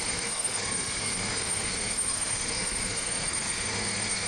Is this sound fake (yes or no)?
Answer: yes